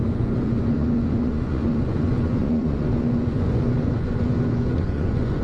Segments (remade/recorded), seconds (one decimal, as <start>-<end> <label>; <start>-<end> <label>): 0.0-5.4 remade